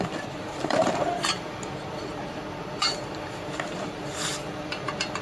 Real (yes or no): no